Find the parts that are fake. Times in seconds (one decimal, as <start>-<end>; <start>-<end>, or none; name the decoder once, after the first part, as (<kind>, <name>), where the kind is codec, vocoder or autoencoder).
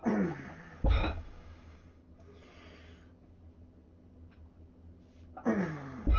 1.0-2.1 (codec, DAC)